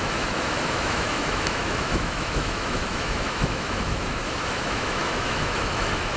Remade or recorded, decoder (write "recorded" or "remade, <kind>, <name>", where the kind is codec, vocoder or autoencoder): remade, autoencoder, DAC-VAE